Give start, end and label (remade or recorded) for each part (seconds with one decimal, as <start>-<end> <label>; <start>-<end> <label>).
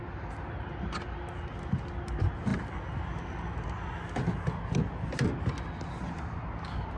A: 0.0-7.0 recorded